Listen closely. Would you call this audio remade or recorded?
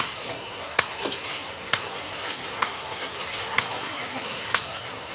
remade